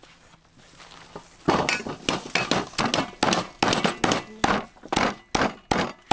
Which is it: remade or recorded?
recorded